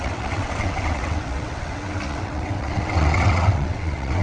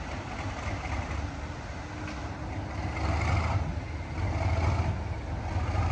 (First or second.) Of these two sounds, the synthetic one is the first